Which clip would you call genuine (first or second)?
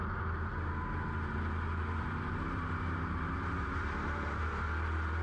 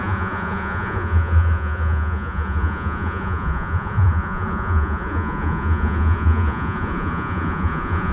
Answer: first